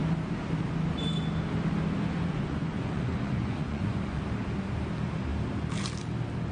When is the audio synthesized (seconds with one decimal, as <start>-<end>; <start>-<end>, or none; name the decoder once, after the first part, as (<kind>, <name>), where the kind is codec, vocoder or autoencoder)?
2.1-4.2 (vocoder, Vocos)